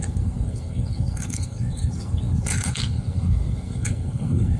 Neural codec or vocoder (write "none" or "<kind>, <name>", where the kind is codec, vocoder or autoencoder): codec, SNAC